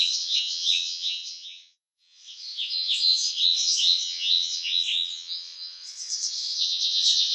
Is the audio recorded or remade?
remade